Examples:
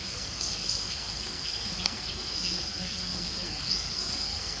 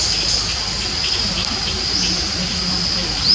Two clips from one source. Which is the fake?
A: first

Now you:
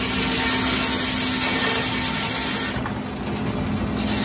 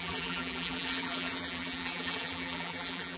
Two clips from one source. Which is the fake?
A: second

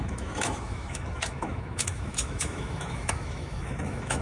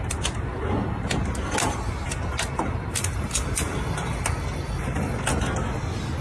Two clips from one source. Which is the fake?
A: first